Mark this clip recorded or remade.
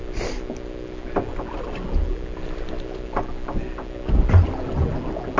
recorded